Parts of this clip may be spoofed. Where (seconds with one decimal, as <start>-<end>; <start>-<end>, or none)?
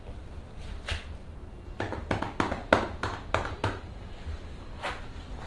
none